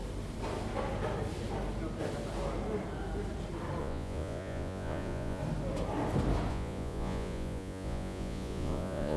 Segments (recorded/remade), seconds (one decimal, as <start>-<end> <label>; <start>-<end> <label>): 0.0-3.8 recorded; 3.8-5.4 remade; 5.4-6.5 recorded; 6.5-9.2 remade